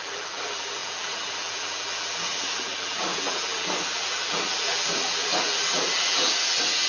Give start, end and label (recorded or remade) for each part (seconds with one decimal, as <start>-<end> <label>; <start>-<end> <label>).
0.0-6.9 remade